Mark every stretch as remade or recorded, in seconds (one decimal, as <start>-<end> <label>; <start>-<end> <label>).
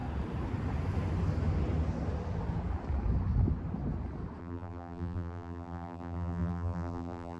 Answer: 0.0-4.4 recorded; 4.4-7.4 remade